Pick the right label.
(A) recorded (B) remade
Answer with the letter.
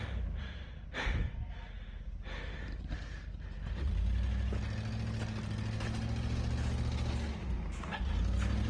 A